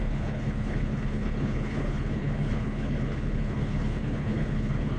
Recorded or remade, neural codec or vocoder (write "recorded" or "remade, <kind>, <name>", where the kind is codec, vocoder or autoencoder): remade, codec, HILCodec